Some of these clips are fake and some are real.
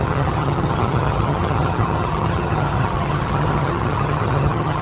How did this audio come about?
fake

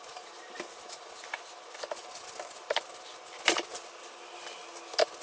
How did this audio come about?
real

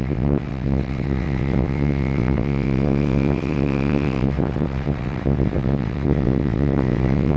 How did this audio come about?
fake